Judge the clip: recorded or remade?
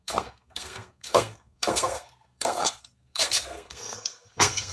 remade